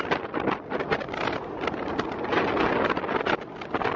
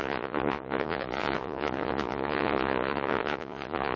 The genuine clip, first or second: first